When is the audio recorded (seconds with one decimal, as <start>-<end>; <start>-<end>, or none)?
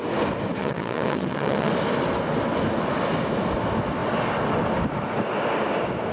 0.0-0.6; 1.7-6.1